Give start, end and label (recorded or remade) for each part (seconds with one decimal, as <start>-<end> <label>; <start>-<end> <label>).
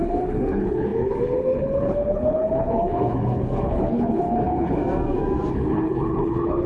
0.0-4.8 remade; 4.8-5.5 recorded; 5.5-6.7 remade